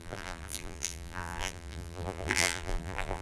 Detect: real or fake fake